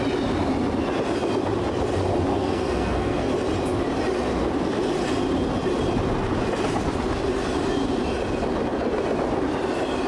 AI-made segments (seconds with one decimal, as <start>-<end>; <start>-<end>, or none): 2.3-3.3